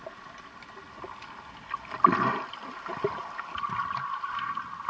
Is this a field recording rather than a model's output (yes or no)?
yes